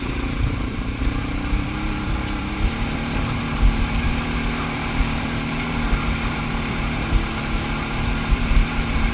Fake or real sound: fake